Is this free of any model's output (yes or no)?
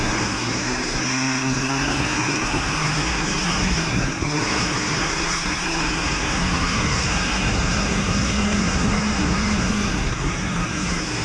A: no